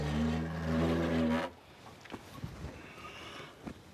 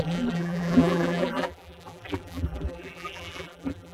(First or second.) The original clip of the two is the first